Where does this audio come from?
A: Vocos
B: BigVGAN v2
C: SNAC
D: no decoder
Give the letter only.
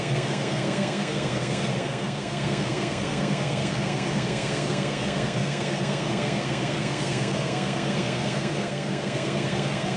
C